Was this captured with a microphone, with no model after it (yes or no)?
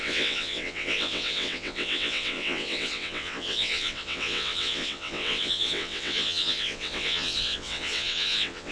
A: no